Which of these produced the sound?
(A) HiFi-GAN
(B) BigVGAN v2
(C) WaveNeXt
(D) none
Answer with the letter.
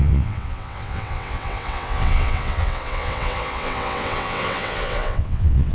C